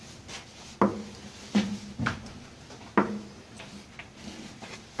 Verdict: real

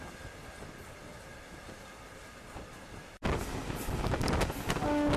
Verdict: real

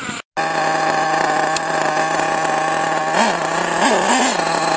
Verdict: real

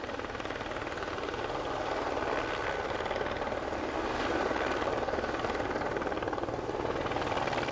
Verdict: real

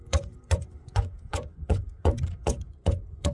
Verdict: fake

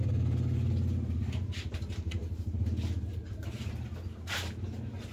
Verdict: real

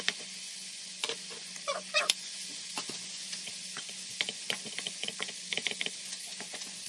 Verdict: fake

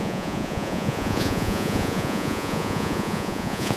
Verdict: fake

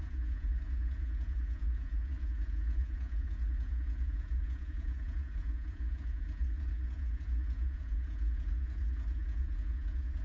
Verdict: fake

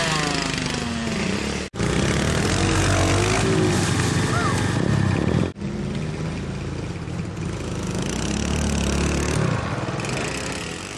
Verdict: real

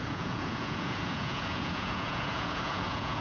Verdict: fake